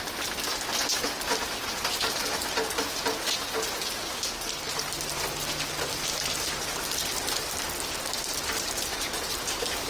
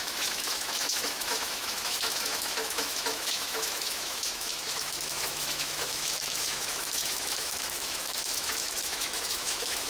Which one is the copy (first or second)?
second